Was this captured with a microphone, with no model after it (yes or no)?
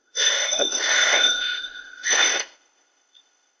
no